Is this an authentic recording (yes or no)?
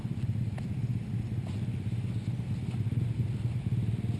yes